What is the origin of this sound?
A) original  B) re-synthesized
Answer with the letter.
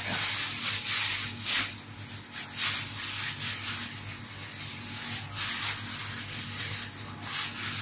A